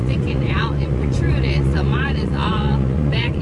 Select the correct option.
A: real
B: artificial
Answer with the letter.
B